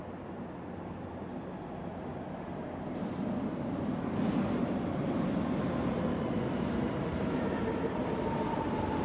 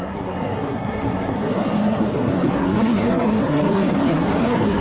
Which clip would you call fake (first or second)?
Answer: second